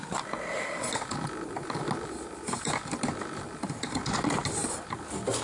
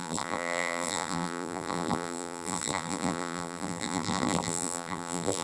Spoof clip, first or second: second